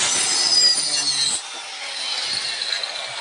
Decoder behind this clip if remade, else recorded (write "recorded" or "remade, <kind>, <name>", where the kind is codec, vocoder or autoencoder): recorded